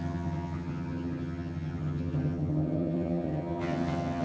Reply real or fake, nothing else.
fake